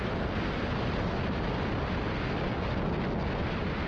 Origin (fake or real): real